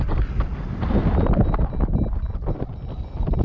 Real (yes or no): yes